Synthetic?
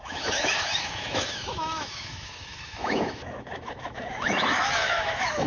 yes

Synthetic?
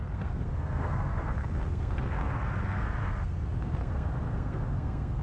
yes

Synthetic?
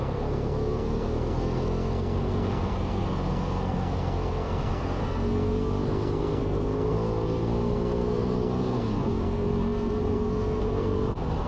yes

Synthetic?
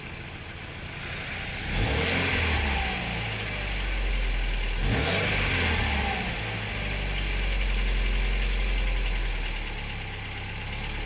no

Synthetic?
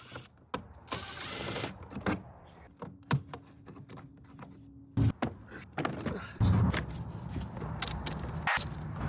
no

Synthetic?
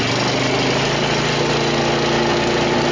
no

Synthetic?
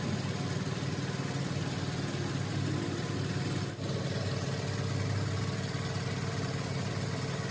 no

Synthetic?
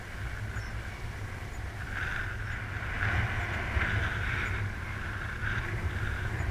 no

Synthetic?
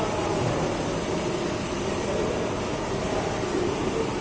no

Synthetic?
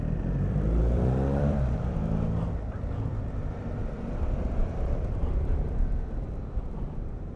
yes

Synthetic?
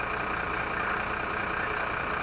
yes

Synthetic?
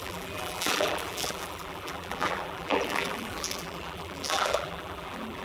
yes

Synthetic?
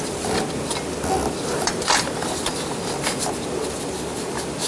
no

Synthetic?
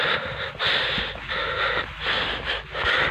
no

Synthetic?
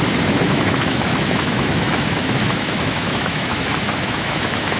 yes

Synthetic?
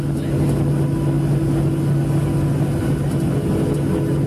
no